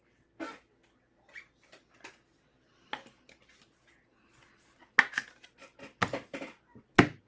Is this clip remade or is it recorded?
recorded